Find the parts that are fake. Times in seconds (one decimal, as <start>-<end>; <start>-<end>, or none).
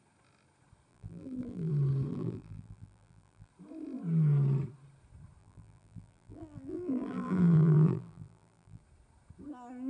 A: 0.9-1.7; 2.1-3.5; 5.4-8.8